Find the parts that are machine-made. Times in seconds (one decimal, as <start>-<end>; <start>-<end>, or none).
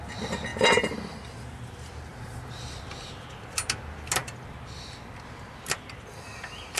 0.5-1.2; 2.1-2.8